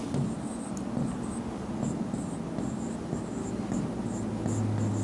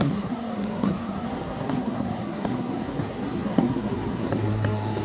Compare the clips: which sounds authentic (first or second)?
first